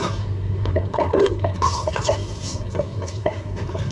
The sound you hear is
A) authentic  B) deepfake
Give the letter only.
B